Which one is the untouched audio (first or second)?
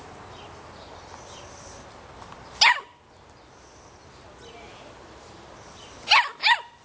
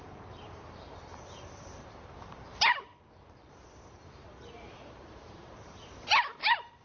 first